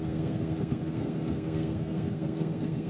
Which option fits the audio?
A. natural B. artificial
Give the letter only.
B